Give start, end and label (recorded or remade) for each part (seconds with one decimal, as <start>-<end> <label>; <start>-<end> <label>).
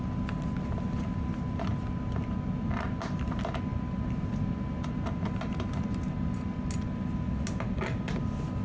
0.0-8.6 recorded